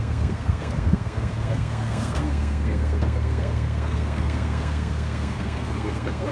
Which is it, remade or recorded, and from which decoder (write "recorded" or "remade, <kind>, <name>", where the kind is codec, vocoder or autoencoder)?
remade, codec, SNAC